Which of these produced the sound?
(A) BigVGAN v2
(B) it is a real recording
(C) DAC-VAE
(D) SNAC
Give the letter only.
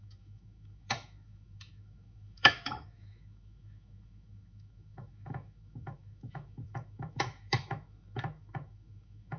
C